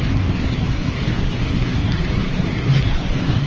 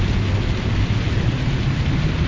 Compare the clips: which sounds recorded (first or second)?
second